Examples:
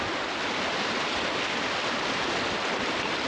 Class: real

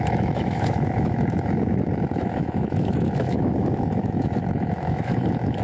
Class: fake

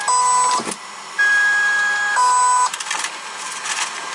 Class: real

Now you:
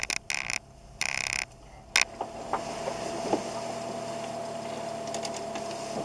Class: real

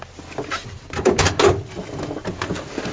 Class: real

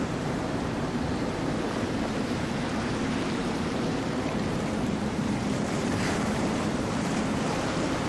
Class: fake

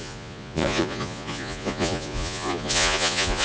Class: fake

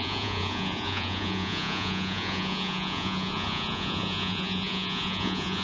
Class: fake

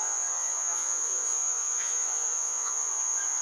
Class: fake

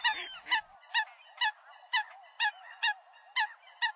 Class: real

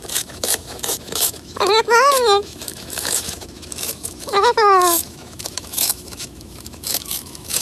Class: fake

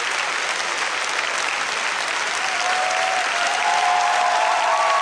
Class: real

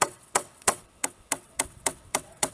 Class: fake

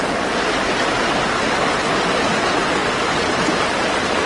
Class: real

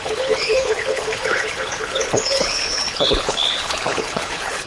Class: fake